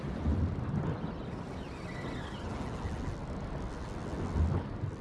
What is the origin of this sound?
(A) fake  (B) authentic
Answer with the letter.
B